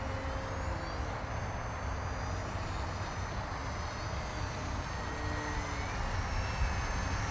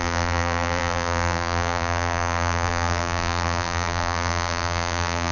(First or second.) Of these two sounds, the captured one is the first